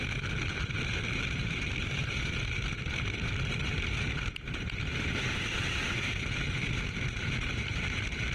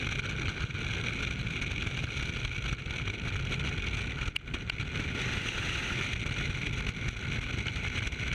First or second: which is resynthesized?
first